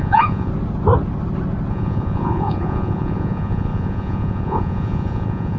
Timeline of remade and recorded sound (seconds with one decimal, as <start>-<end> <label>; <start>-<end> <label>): 0.0-0.5 remade; 0.5-1.7 recorded; 1.7-5.6 remade